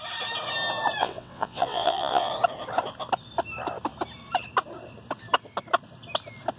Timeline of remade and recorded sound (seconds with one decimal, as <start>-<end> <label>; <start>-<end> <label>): 0.0-1.0 recorded; 1.0-2.3 remade; 2.3-6.6 recorded